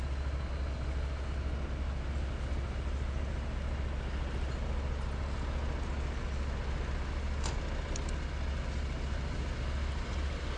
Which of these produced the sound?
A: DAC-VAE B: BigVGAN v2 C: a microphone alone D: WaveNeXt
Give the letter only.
C